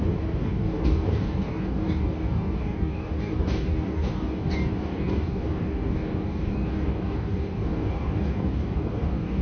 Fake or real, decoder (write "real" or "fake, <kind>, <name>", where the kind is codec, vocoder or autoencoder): fake, codec, DAC